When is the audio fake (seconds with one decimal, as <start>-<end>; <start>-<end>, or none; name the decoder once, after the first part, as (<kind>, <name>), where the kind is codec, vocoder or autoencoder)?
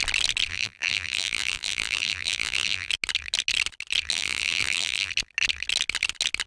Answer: 0.5-2.9 (vocoder, BigVGAN v2); 4.1-5.1